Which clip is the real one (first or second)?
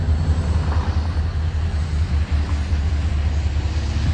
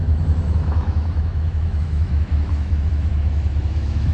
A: first